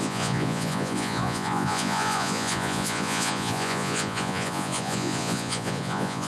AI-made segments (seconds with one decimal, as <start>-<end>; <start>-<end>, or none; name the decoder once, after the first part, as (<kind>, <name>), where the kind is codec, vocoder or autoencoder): 0.0-6.3 (vocoder, Vocos)